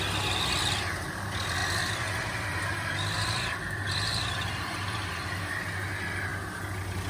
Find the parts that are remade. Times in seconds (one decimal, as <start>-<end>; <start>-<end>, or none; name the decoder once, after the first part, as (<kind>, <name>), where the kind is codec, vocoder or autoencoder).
1.6-5.5 (vocoder, BigVGAN v2)